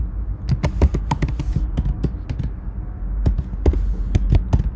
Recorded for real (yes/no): yes